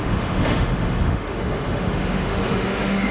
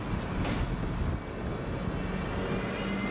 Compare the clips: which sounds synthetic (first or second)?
first